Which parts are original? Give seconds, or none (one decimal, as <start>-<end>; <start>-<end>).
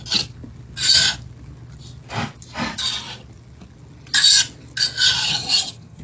0.0-5.2